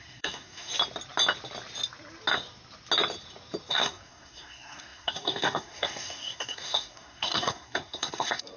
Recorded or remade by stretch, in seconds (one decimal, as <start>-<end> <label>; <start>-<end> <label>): 0.0-0.7 remade; 0.7-3.7 recorded; 3.7-8.6 remade